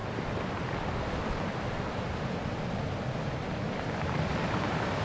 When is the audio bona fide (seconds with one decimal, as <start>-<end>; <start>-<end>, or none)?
0.0-3.4; 4.3-5.0